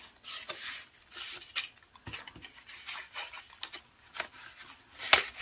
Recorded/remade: recorded